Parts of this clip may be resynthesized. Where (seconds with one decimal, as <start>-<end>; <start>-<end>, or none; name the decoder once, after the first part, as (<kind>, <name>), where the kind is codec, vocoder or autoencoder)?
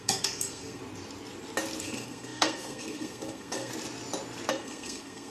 0.0-0.8 (codec, SNAC); 1.8-3.7; 4.5-5.3